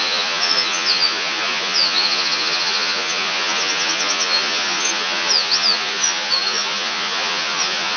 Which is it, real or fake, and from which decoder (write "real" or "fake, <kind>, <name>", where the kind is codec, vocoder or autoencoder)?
fake, vocoder, Vocos